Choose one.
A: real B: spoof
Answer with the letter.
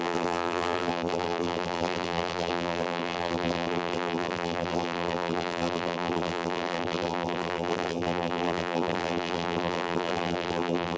B